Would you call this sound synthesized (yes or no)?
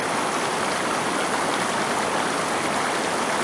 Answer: no